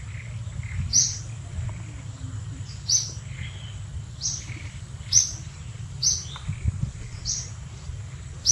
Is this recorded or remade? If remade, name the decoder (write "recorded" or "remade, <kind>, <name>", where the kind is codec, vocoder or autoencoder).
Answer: remade, vocoder, BigVGAN v2